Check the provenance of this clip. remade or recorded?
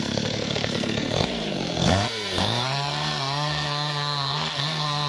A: remade